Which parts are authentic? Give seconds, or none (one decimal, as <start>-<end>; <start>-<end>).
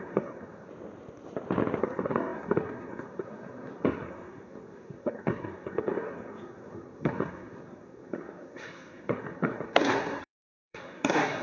0.7-1.8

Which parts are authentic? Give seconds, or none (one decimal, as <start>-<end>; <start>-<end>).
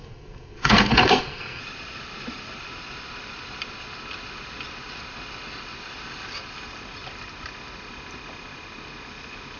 1.6-9.6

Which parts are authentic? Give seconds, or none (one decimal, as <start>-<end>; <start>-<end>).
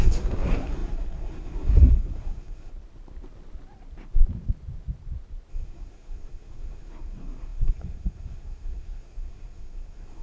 2.7-5.5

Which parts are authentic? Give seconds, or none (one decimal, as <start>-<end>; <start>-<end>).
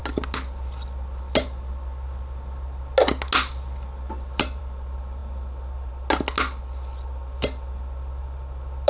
0.0-8.9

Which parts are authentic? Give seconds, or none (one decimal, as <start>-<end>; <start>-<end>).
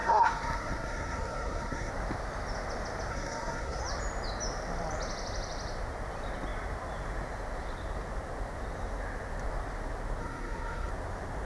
1.9-3.1; 3.8-10.2; 10.9-11.5